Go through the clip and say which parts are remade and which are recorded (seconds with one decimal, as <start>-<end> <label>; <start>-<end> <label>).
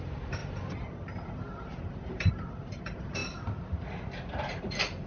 0.0-3.2 remade; 3.2-4.6 recorded; 4.6-5.1 remade